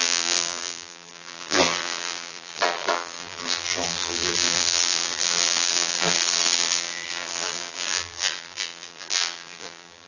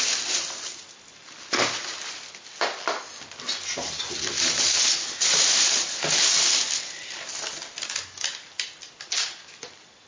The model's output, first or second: first